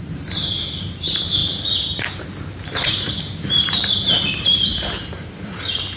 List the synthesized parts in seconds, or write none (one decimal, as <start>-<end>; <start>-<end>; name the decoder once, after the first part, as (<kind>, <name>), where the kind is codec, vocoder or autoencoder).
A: 0.0-1.4 (vocoder, BigVGAN v2); 2.6-6.0